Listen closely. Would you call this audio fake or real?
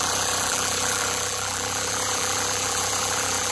fake